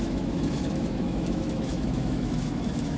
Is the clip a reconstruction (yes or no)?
yes